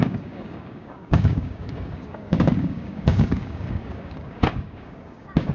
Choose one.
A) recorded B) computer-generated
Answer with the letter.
B